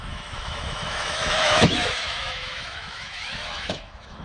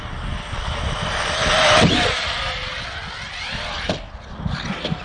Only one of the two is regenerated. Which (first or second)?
first